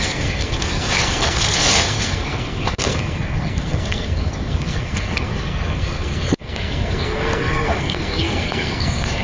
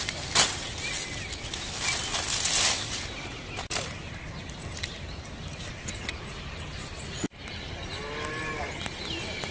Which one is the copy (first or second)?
first